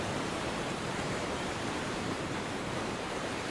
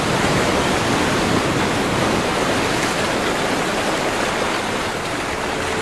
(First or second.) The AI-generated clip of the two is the first